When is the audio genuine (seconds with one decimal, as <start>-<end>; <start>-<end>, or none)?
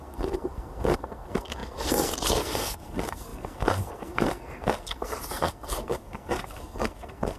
none